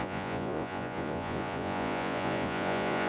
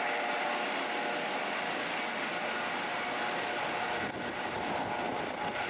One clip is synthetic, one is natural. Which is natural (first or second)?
second